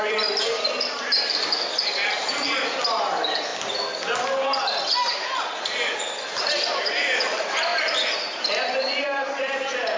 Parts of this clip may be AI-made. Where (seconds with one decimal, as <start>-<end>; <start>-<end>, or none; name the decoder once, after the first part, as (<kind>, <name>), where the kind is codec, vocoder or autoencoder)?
0.0-3.5 (vocoder, BigVGAN v2); 6.9-10.0